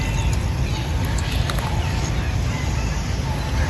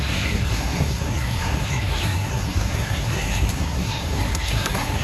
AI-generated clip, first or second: second